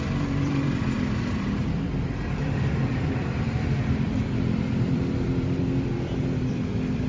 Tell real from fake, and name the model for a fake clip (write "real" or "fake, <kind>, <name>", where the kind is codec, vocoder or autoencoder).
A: fake, vocoder, BigVGAN v2